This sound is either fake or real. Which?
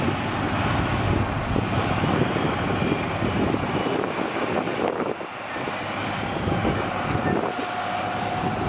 real